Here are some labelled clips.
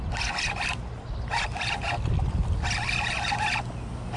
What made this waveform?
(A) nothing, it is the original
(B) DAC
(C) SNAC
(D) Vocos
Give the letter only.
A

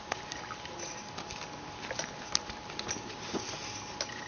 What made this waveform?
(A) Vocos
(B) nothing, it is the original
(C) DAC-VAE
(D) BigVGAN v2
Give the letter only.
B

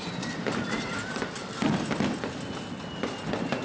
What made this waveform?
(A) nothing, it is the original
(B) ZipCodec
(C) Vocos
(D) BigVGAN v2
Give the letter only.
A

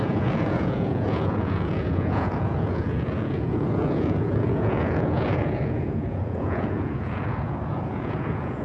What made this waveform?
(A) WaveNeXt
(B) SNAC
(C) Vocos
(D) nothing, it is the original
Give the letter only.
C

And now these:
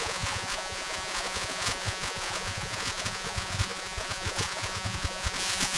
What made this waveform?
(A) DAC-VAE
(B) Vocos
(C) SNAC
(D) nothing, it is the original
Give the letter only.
B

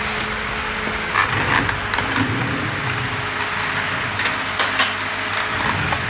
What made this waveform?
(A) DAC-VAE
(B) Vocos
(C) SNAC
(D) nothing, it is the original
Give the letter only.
D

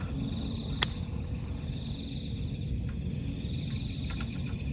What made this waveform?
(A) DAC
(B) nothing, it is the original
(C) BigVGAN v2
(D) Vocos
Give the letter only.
B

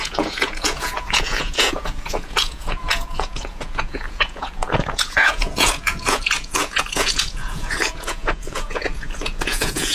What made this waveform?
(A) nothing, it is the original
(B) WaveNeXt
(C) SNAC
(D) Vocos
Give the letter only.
D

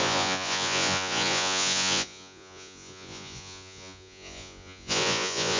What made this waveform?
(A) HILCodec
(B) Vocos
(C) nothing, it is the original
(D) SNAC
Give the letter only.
B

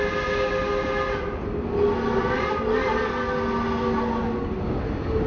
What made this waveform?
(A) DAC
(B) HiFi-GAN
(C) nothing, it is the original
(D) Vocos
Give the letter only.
C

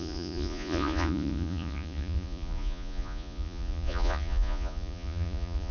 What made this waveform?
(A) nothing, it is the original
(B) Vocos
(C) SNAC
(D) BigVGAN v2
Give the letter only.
B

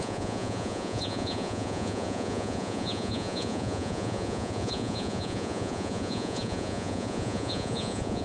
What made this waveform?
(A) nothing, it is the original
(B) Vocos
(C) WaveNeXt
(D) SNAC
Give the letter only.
B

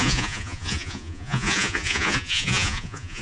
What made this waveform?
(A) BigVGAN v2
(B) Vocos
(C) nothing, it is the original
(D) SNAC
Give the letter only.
B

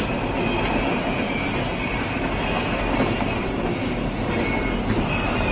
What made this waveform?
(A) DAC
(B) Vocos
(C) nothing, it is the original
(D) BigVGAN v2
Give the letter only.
C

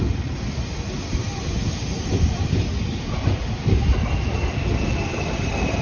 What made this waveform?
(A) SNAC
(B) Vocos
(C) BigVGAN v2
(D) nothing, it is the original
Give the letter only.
D